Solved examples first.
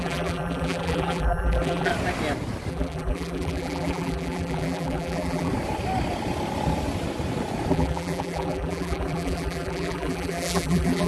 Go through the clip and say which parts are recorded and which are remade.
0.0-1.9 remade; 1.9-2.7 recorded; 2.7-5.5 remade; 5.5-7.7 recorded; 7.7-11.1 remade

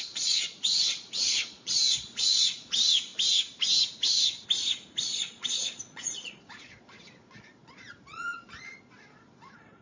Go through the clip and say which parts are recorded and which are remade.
0.0-3.1 remade; 3.1-5.0 recorded; 5.0-9.8 remade

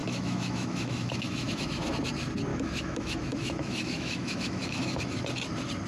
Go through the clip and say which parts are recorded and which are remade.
0.0-1.9 remade; 1.9-2.5 recorded; 2.5-5.0 remade; 5.0-5.9 recorded